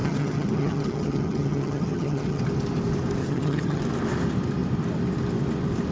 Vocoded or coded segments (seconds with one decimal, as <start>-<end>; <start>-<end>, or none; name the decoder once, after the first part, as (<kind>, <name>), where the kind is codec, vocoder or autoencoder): 0.0-2.4 (vocoder, HiFi-GAN); 3.2-3.8